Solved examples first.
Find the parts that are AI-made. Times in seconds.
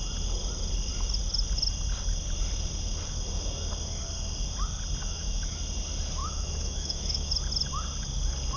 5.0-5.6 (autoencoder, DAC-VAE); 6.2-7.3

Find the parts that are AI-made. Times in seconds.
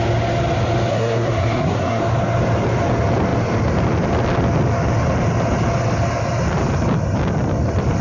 0.9-2.0 (codec, SNAC)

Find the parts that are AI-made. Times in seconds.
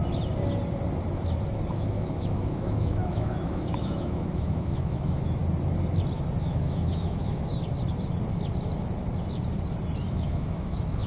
1.7-5.4 (autoencoder, DAC-VAE); 6.4-7.5; 10.1-11.1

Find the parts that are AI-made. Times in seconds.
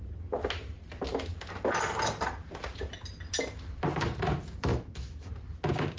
4.7-5.3 (autoencoder, DAC-VAE)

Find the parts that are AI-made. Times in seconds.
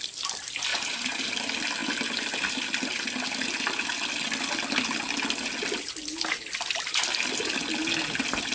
0.7-1.3 (vocoder, BigVGAN v2)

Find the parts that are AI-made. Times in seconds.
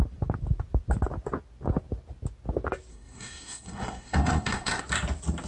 2.9-4.8 (codec, SNAC)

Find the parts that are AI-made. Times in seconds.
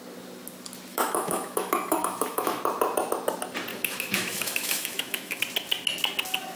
0.9-2.6 (autoencoder, DAC-VAE); 3.7-5.4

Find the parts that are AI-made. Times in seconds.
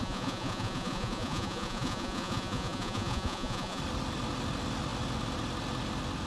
0.0-3.8 (vocoder, Vocos)